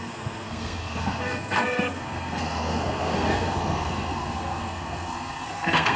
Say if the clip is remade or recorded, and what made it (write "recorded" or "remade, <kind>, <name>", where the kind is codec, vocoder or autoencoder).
remade, codec, SNAC